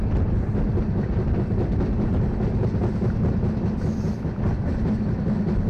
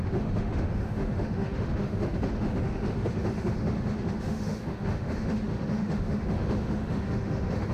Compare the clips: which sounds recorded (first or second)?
first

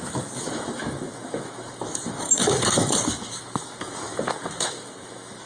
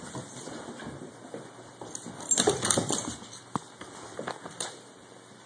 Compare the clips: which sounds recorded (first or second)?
second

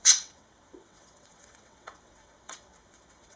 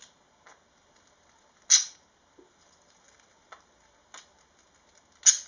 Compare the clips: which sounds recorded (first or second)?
second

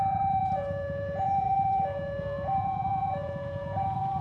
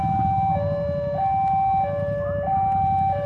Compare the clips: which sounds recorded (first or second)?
second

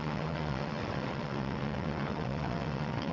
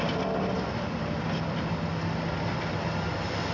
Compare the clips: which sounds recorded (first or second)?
second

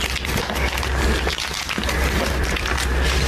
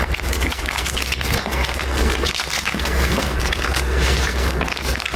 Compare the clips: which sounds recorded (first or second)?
first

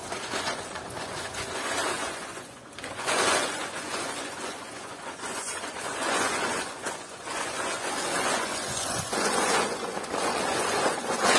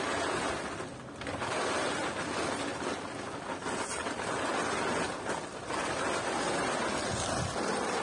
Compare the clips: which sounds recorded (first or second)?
second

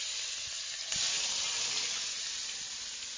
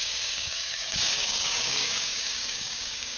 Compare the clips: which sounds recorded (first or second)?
first